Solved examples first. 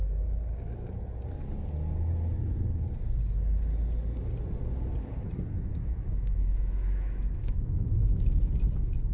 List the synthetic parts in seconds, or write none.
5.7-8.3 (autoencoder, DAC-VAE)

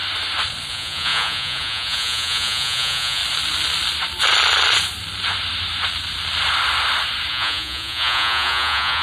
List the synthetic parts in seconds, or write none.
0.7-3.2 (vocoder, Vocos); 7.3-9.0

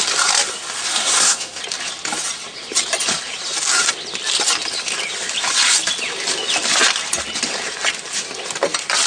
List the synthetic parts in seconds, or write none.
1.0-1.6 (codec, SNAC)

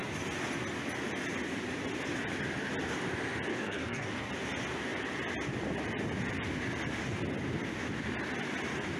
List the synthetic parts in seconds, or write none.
3.5-4.3 (codec, DAC)